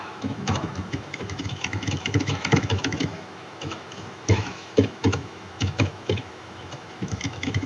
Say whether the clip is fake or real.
fake